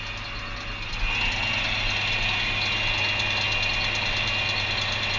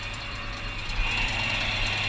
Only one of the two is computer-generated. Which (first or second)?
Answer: second